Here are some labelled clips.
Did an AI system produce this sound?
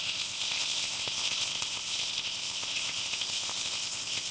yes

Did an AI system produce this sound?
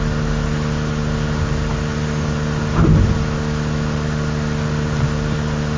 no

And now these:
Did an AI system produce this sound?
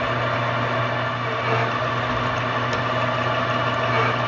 no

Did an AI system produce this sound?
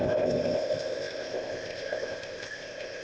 yes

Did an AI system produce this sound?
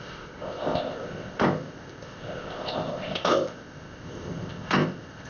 yes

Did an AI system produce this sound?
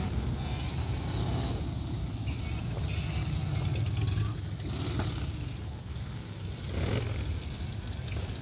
no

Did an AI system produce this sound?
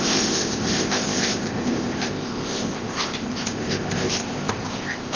yes